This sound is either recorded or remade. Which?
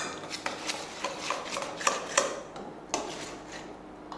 recorded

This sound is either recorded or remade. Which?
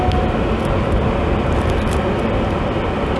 recorded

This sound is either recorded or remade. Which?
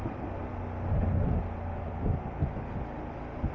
recorded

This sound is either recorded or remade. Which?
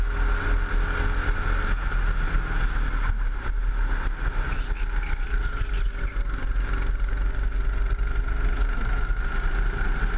recorded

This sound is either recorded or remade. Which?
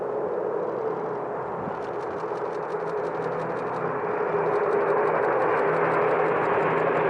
recorded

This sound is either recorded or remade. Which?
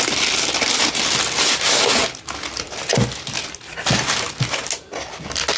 recorded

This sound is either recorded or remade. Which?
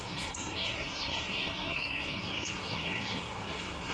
remade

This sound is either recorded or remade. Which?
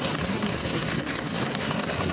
remade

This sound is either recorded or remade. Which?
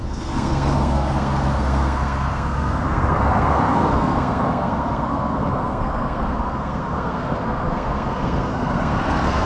remade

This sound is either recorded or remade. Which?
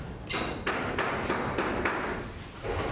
recorded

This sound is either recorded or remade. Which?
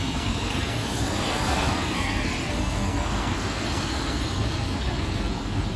remade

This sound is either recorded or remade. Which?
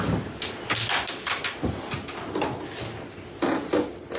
recorded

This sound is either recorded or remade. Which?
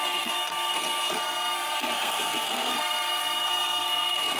remade